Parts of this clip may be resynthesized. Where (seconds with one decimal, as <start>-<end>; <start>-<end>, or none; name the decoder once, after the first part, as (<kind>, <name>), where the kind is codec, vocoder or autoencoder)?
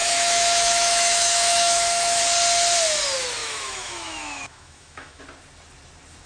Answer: 0.0-2.2 (autoencoder, DAC-VAE); 3.4-5.2